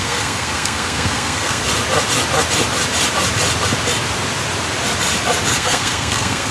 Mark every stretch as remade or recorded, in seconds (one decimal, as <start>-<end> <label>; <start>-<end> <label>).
0.0-1.6 remade; 1.6-5.5 recorded; 5.5-6.5 remade